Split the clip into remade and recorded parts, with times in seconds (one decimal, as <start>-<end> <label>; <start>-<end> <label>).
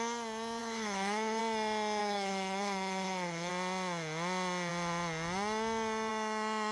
0.0-0.6 recorded; 0.6-1.4 remade; 1.4-2.0 recorded; 2.0-3.5 remade; 3.5-6.7 recorded